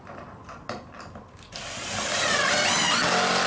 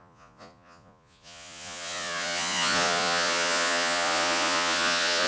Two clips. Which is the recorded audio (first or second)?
first